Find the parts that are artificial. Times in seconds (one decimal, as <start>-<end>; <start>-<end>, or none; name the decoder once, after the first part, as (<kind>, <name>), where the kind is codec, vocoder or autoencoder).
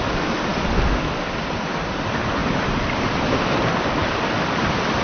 none